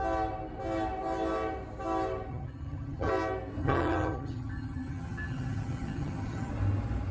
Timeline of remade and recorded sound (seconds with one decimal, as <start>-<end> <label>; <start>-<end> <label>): 0.0-2.3 recorded; 2.3-3.1 remade; 3.1-3.6 recorded; 3.6-6.5 remade; 6.5-7.1 recorded